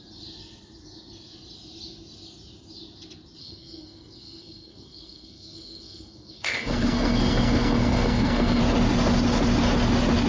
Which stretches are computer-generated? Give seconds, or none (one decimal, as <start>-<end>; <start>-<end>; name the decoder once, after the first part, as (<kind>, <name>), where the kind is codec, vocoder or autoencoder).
3.4-8.6 (codec, SNAC)